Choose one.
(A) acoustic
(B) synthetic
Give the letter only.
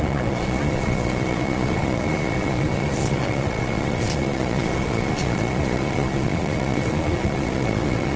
B